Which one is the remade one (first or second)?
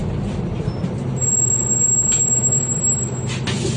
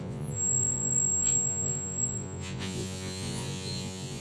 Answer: second